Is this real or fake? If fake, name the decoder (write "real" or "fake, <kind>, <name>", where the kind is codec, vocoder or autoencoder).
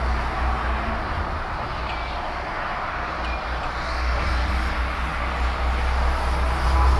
real